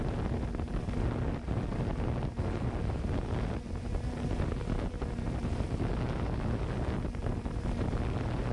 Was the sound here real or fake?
real